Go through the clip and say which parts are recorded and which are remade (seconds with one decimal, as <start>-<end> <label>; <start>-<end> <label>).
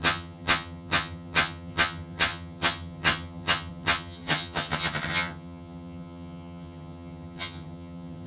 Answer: 0.0-8.3 remade